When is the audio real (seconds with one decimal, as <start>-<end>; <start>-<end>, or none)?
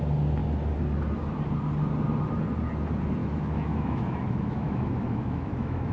0.0-3.2